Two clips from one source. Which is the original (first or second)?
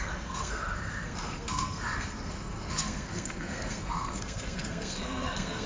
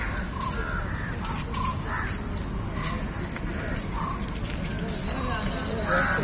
second